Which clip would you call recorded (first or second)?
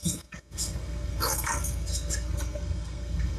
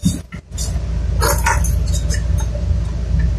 second